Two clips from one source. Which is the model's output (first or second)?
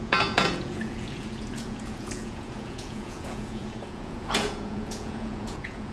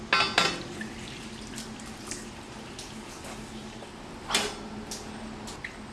first